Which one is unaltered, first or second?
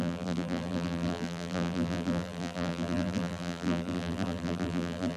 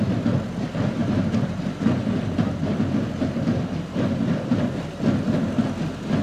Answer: second